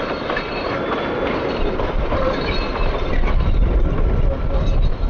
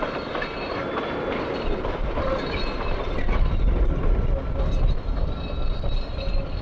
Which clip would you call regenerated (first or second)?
first